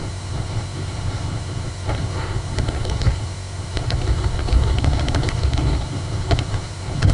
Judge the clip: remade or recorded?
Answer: remade